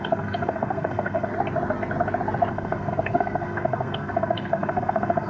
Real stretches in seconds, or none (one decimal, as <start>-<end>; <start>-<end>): 1.3-2.5